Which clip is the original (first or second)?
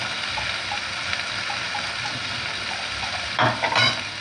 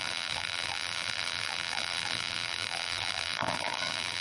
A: first